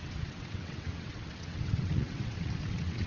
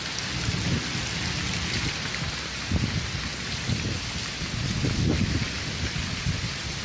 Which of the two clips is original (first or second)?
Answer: second